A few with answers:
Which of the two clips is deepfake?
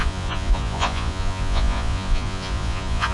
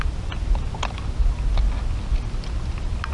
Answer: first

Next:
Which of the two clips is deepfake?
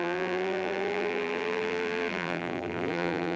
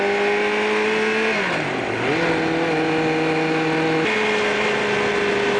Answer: first